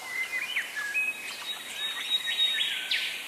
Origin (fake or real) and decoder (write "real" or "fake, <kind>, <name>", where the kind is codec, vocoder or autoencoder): real